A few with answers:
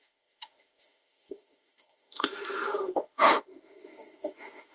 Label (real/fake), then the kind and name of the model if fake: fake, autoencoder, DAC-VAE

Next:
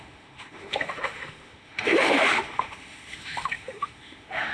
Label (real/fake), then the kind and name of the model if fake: fake, autoencoder, DAC-VAE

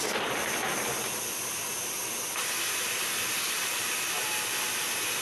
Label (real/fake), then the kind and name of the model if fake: real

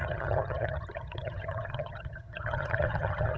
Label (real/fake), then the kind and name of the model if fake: fake, vocoder, HiFi-GAN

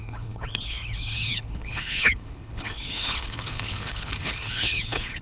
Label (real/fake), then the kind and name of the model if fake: fake, codec, HILCodec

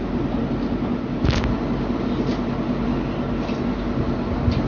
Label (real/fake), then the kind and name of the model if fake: real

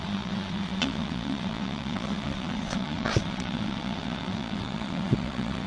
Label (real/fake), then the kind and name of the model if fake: fake, vocoder, WaveNeXt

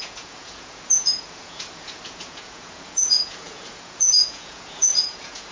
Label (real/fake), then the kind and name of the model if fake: fake, vocoder, Vocos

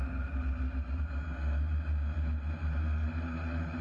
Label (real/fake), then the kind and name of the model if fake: real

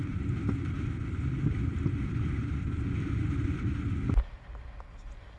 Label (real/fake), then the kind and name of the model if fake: fake, vocoder, BigVGAN v2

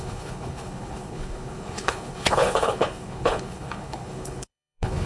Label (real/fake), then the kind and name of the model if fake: fake, codec, HILCodec